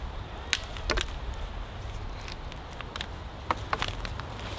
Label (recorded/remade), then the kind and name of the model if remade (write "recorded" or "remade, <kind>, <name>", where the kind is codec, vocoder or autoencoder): recorded